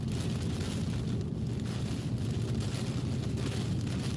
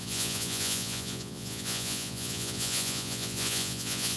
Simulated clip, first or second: second